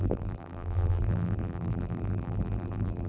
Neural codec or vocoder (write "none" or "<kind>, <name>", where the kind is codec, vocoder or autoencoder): vocoder, BigVGAN v2